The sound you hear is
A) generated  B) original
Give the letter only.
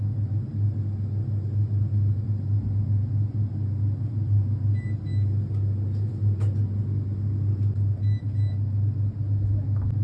B